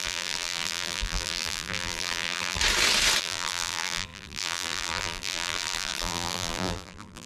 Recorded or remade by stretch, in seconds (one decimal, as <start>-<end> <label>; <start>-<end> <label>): 0.0-2.6 remade; 2.6-3.2 recorded; 3.2-7.3 remade